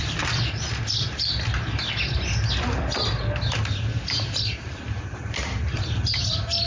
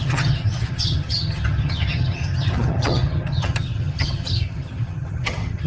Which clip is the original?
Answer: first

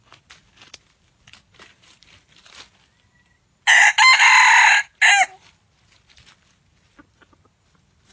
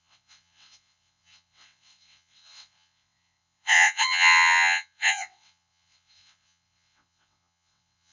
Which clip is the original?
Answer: first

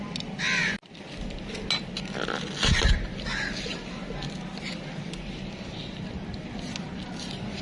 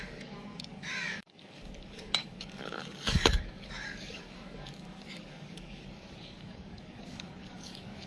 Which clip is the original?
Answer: first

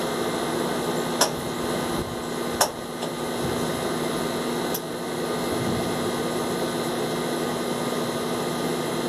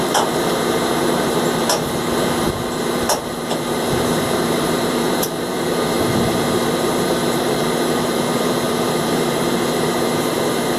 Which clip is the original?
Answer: first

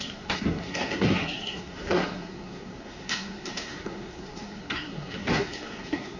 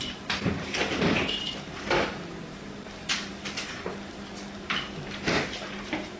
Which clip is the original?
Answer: second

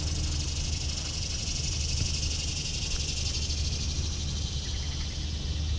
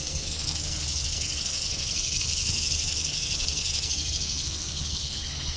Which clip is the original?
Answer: first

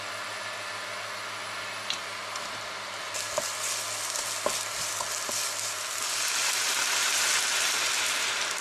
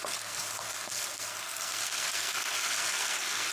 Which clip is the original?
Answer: first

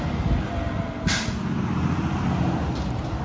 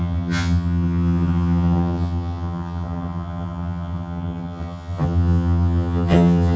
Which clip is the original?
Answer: first